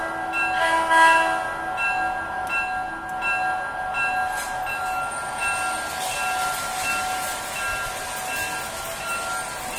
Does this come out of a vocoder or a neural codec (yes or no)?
no